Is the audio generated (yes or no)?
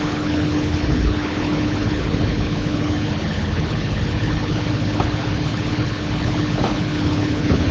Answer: yes